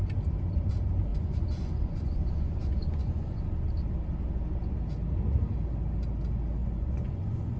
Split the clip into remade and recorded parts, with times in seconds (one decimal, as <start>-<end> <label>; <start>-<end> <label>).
0.0-1.1 recorded; 1.1-3.4 remade; 3.4-6.6 recorded; 6.6-7.6 remade